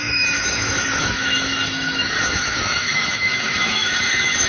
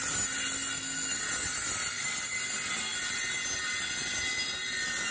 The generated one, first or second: first